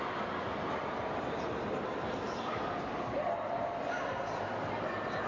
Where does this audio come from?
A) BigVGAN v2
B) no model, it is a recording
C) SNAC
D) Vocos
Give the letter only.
B